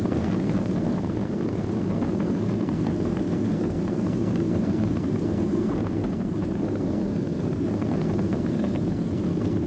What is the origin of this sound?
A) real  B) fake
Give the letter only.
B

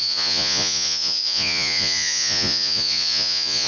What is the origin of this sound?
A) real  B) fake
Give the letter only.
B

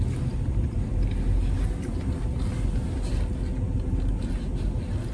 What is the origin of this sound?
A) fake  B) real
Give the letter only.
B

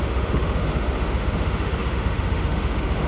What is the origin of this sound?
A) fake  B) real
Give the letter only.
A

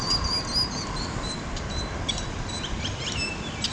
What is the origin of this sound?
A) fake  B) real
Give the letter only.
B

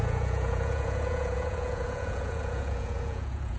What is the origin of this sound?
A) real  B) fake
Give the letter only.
B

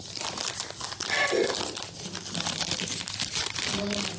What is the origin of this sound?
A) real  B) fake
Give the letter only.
B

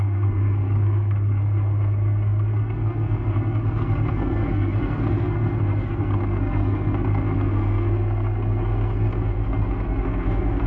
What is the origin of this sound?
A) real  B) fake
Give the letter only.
B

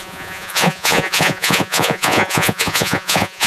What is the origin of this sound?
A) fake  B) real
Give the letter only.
A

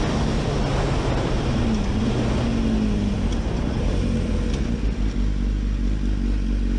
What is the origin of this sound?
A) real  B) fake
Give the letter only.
A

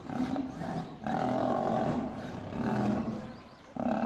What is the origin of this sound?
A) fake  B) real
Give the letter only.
A